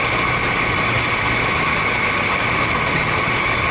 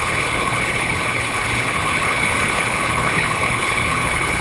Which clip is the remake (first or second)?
second